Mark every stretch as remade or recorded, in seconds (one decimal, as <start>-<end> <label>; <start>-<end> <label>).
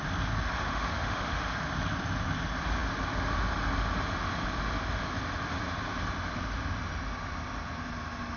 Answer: 0.0-0.7 recorded; 0.7-1.4 remade; 1.4-8.4 recorded